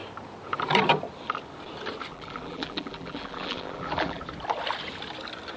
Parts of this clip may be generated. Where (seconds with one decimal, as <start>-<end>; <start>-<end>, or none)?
2.1-4.2